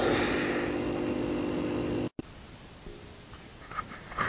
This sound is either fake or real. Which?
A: real